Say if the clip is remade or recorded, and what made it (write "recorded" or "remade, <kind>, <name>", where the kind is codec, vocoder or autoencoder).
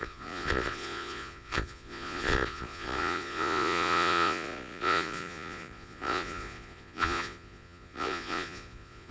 remade, vocoder, Vocos